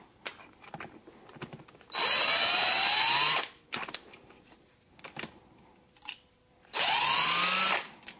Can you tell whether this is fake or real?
real